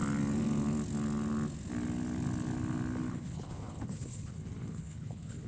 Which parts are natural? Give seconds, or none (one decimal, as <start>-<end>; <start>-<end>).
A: 0.0-3.1